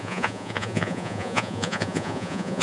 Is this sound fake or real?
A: fake